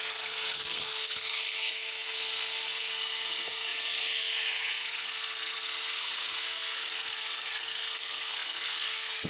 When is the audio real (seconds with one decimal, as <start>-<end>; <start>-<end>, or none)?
none